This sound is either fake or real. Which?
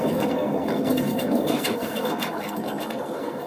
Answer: fake